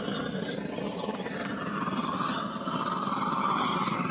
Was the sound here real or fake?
real